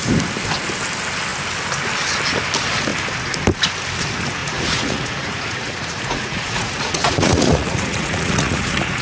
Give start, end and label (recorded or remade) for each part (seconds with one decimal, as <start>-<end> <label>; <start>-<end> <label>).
0.0-4.4 recorded; 4.4-9.0 remade